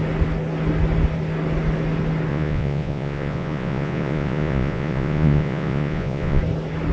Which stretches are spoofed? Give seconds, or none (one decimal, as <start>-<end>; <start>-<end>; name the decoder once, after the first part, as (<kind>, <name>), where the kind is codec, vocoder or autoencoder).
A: 2.3-6.4 (vocoder, Vocos)